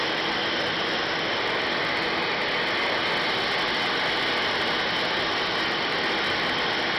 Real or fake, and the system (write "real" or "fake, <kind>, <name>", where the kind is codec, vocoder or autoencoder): real